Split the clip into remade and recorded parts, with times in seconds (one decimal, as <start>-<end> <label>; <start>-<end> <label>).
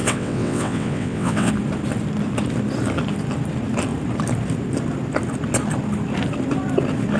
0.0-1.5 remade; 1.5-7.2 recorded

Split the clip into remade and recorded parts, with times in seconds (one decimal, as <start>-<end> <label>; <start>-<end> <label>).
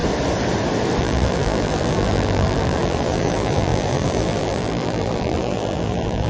0.0-1.0 recorded; 1.0-6.3 remade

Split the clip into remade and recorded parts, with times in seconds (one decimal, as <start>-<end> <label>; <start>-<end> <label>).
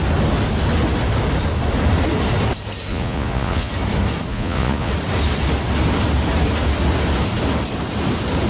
0.0-2.9 recorded; 2.9-3.7 remade; 3.7-4.3 recorded; 4.3-4.9 remade; 4.9-8.5 recorded